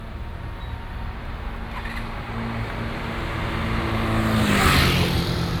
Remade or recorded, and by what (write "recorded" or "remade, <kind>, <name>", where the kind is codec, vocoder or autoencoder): recorded